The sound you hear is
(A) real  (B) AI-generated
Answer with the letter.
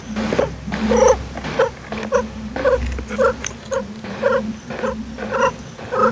A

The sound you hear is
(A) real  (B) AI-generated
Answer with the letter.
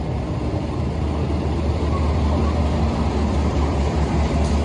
A